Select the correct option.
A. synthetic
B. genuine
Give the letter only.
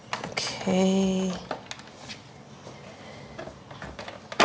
B